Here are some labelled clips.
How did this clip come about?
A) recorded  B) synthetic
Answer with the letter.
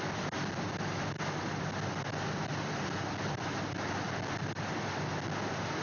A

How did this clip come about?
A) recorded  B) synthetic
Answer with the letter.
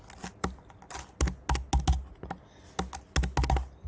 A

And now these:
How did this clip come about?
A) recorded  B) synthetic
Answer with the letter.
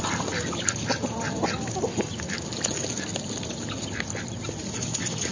A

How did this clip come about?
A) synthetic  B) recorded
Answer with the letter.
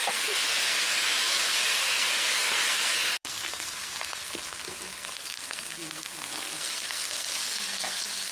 A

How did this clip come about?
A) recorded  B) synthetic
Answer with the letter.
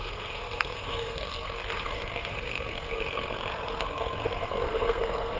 B